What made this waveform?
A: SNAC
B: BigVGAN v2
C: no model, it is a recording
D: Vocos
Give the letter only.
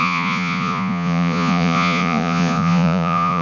D